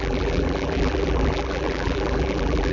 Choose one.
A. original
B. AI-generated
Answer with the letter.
B